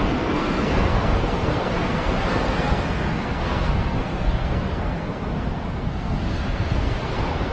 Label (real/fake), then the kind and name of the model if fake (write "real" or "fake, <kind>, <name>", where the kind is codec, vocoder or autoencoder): fake, codec, SNAC